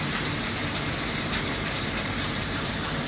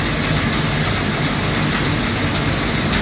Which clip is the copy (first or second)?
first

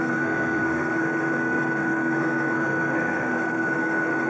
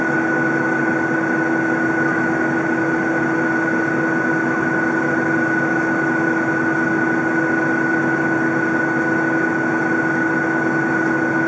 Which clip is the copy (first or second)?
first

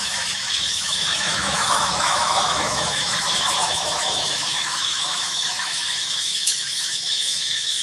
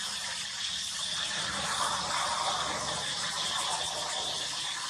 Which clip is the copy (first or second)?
first